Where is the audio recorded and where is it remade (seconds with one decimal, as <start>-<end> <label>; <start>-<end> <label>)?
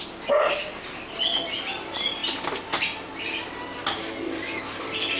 0.0-5.2 recorded